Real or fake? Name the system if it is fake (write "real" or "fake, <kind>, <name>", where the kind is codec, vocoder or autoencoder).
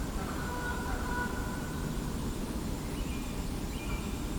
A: real